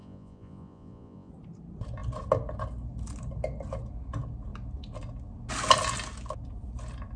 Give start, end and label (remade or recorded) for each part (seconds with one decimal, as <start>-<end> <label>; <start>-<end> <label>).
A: 0.0-1.3 remade; 1.3-7.2 recorded

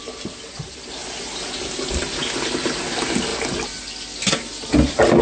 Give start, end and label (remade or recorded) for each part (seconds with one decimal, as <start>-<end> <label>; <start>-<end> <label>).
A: 0.0-5.2 recorded

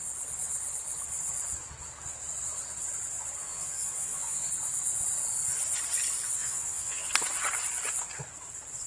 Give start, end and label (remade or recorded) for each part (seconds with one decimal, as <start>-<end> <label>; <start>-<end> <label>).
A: 0.0-3.4 recorded; 3.4-4.5 remade; 4.5-6.4 recorded; 6.4-7.1 remade; 7.1-8.9 recorded

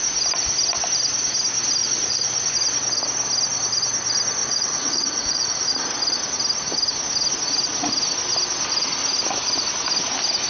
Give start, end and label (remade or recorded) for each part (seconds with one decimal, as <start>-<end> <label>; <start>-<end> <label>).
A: 0.0-1.8 recorded; 1.8-2.5 remade; 2.5-4.4 recorded; 4.4-5.7 remade; 5.7-10.5 recorded

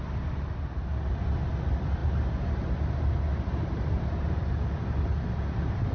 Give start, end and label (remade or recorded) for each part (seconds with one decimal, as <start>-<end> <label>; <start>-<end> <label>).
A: 0.0-2.0 recorded; 2.0-4.3 remade; 4.3-5.9 recorded

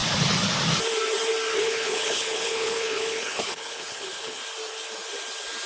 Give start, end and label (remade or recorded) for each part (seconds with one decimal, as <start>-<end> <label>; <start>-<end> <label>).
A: 0.0-1.5 recorded; 1.5-4.4 remade; 4.4-5.7 recorded